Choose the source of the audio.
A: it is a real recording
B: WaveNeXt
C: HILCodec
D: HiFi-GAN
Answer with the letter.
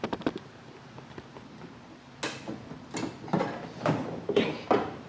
A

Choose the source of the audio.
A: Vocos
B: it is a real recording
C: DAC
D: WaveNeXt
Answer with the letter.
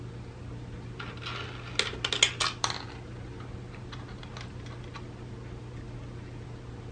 B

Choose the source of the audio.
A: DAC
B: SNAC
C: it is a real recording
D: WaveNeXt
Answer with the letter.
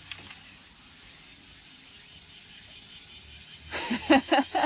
C